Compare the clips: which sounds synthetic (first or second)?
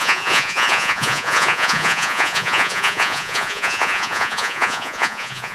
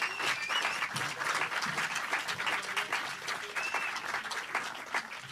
first